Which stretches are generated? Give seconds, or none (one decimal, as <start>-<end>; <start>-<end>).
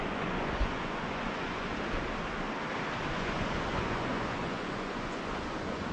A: 0.0-1.7; 3.1-5.9